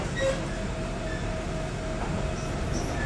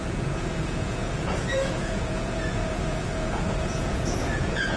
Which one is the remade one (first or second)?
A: second